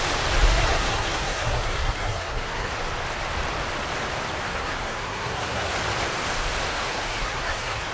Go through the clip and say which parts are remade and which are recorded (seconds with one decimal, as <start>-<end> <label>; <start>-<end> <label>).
0.0-0.5 recorded; 0.5-2.7 remade; 2.7-4.5 recorded; 4.5-5.7 remade; 5.7-6.7 recorded; 6.7-7.9 remade